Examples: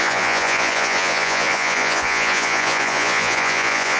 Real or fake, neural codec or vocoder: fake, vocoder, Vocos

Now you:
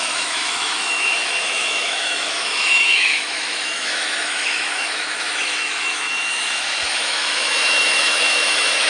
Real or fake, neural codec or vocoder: fake, autoencoder, DAC-VAE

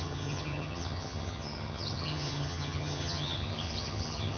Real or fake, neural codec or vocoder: fake, vocoder, HiFi-GAN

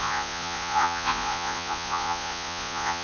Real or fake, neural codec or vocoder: fake, vocoder, Vocos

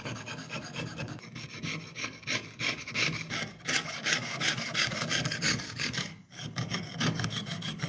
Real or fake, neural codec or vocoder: fake, codec, DAC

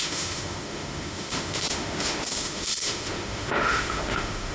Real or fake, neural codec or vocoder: fake, autoencoder, DAC-VAE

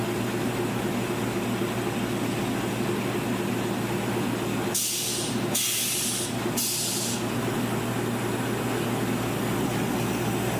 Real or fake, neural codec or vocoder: real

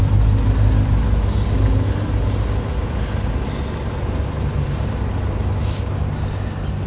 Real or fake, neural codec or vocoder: real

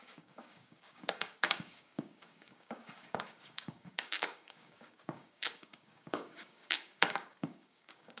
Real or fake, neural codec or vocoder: fake, codec, DAC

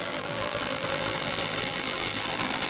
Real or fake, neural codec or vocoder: fake, vocoder, BigVGAN v2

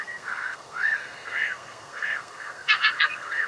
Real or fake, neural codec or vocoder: fake, codec, SNAC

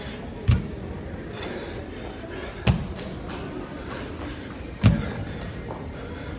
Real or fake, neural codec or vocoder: real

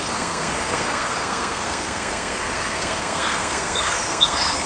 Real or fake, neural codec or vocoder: fake, codec, SNAC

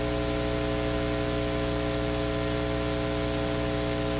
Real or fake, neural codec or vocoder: real